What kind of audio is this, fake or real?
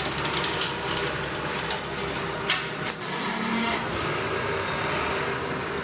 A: real